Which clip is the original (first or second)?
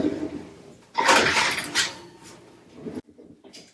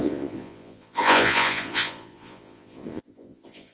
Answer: first